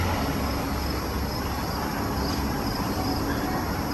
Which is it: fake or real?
real